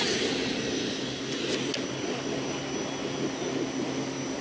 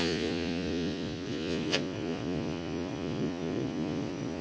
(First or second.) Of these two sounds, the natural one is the first